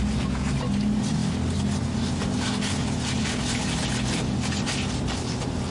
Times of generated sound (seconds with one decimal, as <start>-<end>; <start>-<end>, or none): none